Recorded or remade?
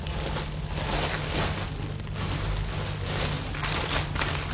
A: recorded